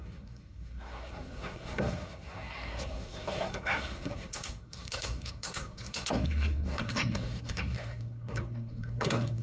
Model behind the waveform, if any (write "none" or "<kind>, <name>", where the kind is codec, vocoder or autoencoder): codec, SNAC